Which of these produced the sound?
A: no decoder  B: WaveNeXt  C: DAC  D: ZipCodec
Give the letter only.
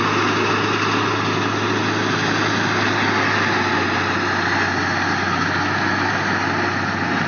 A